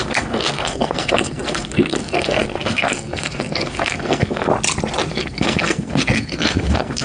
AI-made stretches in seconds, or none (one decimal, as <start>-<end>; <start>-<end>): 0.0-4.5; 5.1-7.0